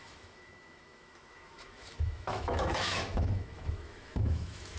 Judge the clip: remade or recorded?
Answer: remade